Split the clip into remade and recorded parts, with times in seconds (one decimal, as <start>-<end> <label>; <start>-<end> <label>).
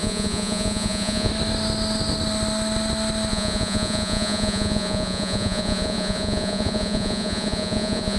0.0-1.3 remade; 1.3-3.3 recorded; 3.3-8.2 remade